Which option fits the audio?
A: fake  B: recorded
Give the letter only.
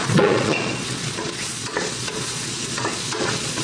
A